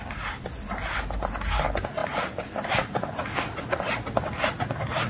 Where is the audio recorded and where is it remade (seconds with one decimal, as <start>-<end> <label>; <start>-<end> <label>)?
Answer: 0.0-5.1 recorded